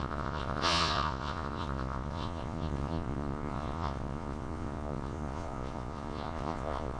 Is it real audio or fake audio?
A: fake